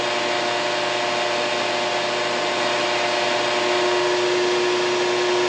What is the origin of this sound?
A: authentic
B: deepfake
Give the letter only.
A